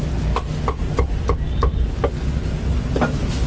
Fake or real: real